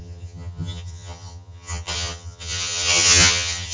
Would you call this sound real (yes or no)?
no